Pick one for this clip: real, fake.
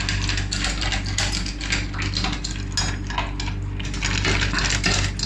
real